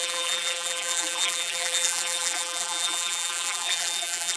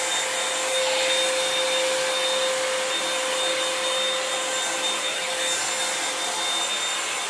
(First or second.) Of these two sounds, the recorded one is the second